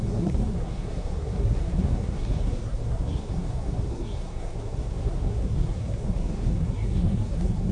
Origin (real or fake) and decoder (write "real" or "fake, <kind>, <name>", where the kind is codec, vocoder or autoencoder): fake, codec, SNAC